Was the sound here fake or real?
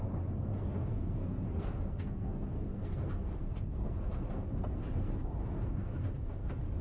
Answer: fake